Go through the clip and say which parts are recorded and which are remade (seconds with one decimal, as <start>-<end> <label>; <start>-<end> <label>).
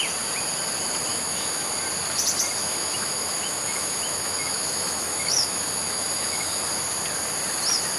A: 0.0-1.1 recorded; 1.1-1.7 remade; 1.7-2.6 recorded; 2.6-6.7 remade; 6.7-8.0 recorded